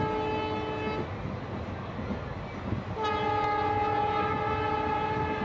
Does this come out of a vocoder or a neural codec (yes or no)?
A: no